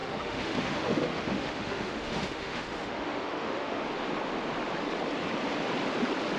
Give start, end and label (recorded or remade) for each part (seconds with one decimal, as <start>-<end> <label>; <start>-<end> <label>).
0.0-3.8 remade; 3.8-6.4 recorded